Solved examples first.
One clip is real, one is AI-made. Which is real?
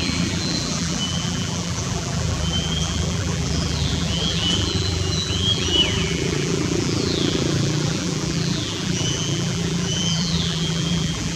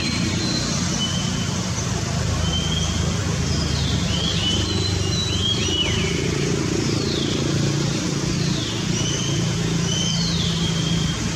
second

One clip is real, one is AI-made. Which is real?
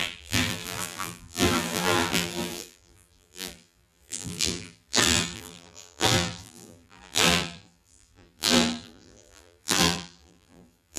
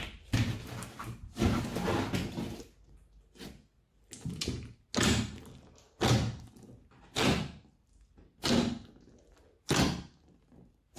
second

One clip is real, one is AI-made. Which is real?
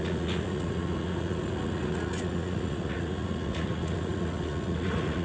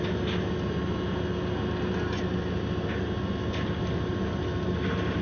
second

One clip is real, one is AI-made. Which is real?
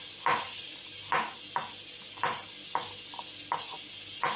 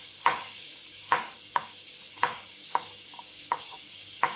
first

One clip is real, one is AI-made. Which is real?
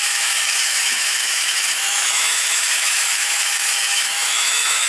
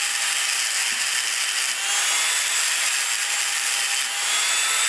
second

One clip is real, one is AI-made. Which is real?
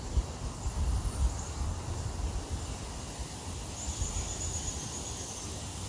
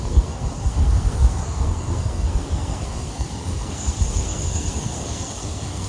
first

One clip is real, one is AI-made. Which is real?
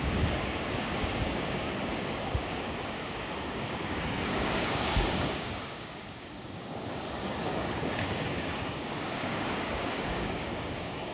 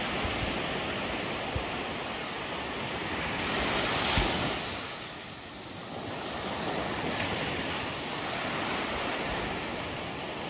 second